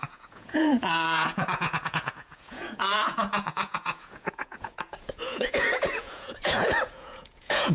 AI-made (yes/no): yes